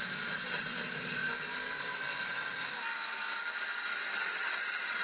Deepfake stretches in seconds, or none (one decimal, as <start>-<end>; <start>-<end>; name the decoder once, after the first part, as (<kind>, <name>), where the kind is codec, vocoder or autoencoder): 0.0-1.2 (vocoder, Vocos); 4.2-5.0